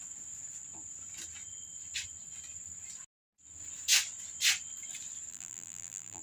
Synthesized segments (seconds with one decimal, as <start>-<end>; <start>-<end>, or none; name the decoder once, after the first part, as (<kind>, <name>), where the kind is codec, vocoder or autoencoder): 5.3-6.2 (vocoder, BigVGAN v2)

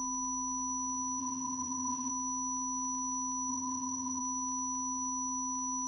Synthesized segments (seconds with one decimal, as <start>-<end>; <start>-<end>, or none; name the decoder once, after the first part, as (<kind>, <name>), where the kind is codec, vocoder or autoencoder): 1.2-2.1 (vocoder, HiFi-GAN); 3.5-4.2